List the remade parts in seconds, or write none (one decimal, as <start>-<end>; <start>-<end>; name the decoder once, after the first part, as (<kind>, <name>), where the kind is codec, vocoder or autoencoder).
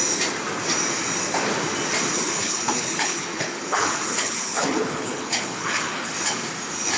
2.1-6.1 (codec, HILCodec)